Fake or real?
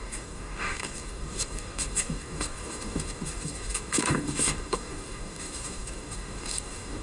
fake